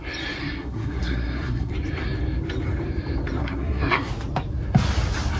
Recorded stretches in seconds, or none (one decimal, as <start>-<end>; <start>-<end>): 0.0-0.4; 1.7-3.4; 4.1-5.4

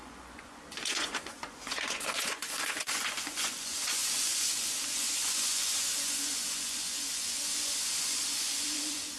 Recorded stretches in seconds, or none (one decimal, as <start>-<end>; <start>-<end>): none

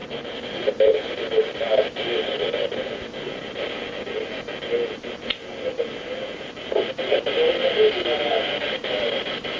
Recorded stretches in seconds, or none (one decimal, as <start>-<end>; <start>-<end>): 2.2-9.6